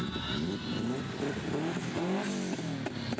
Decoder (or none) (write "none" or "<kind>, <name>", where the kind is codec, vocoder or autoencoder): none